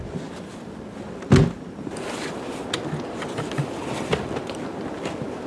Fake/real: real